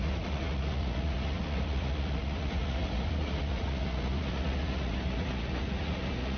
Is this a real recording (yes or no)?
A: no